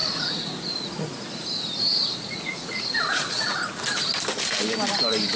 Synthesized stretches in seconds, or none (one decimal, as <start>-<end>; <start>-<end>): 0.0-1.0; 1.9-3.8